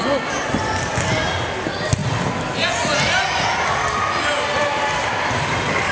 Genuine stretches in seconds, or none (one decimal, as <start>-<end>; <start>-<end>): 0.0-5.9